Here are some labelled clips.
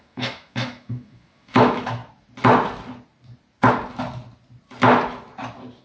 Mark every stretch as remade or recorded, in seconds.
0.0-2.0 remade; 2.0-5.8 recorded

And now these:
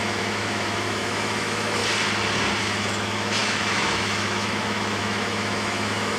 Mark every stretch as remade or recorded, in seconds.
0.0-1.8 remade; 1.8-2.6 recorded; 2.6-6.2 remade

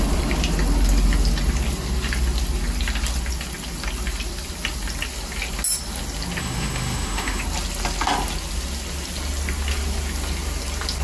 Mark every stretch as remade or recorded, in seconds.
0.0-6.4 recorded; 6.4-7.4 remade; 7.4-11.0 recorded